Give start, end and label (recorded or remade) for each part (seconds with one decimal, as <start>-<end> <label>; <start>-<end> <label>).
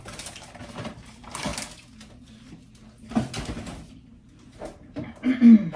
0.0-1.5 remade; 1.5-3.9 recorded; 3.9-5.8 remade